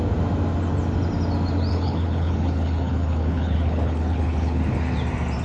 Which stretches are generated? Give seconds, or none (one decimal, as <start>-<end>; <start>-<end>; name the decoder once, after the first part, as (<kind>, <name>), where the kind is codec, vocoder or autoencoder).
1.7-4.6 (codec, HILCodec)